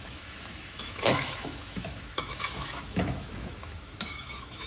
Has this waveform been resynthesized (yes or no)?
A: yes